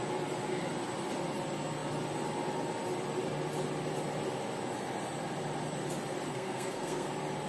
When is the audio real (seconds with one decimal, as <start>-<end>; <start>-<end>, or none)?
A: 0.0-6.3; 7.1-7.5